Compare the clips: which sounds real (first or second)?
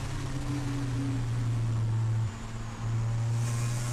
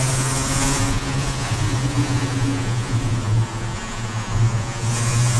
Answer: first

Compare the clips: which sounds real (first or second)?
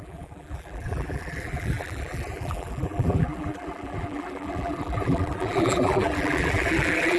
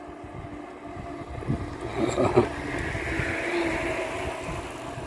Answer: second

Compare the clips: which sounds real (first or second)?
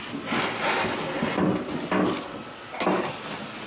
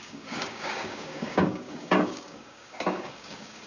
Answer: first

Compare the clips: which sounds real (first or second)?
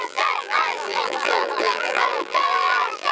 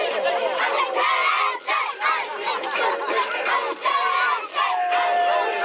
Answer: second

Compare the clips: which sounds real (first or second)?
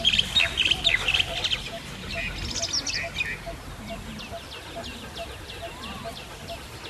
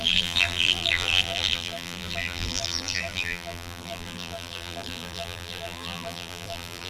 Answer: first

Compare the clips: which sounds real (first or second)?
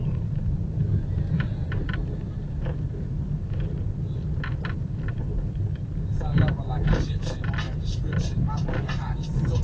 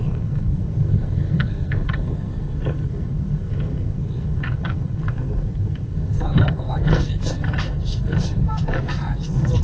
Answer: first